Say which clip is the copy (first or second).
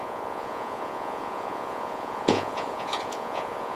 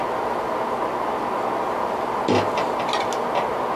first